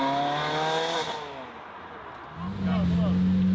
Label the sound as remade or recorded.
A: recorded